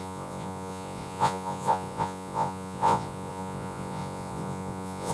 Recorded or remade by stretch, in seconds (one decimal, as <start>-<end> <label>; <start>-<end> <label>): 0.0-5.1 remade